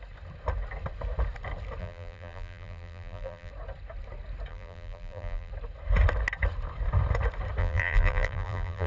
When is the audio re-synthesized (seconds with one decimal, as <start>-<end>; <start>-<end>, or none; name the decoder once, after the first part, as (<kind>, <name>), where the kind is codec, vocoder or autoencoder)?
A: 1.8-3.5 (vocoder, BigVGAN v2); 4.5-5.5; 7.6-8.9